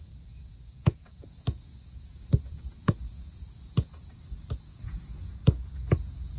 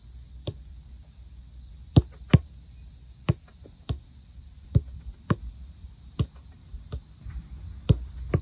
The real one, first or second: second